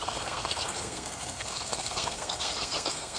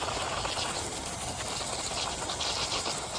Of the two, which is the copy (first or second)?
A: first